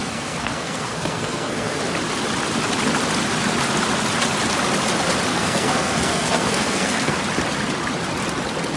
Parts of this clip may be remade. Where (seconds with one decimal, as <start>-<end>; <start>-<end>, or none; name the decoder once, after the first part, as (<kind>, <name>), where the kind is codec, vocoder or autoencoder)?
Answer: 0.0-1.8 (codec, SNAC); 5.3-7.2